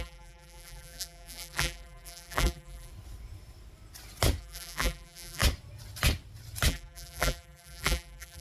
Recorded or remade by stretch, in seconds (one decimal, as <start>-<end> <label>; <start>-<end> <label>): 0.0-2.9 remade; 2.9-4.4 recorded; 4.4-5.4 remade; 5.4-6.7 recorded; 6.7-8.4 remade